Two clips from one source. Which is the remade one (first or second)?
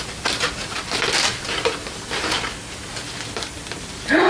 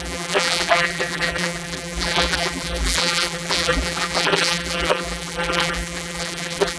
second